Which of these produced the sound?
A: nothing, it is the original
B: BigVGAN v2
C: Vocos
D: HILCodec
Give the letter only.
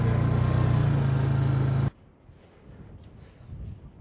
A